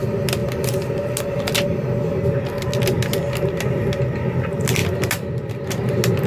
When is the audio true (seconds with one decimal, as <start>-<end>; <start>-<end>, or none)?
0.0-6.3